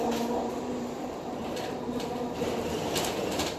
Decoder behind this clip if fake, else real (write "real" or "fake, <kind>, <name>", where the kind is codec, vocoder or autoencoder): fake, vocoder, BigVGAN v2